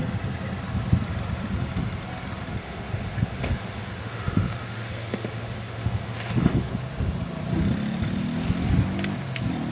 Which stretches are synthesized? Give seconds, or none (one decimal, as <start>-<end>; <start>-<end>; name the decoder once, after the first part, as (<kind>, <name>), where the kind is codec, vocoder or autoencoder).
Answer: 2.6-6.7 (autoencoder, DAC-VAE)